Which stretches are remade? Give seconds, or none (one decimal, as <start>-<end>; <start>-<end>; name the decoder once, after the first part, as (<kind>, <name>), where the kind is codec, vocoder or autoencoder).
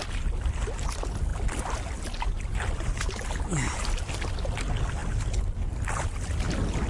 none